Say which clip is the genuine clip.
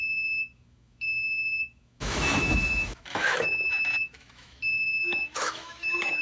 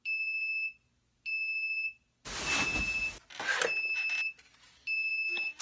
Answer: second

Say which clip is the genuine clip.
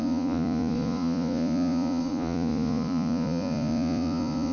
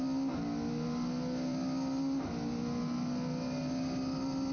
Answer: second